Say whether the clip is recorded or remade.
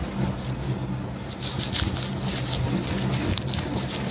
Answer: recorded